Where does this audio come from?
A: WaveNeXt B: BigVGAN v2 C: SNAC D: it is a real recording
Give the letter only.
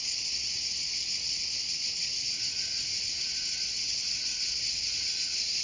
A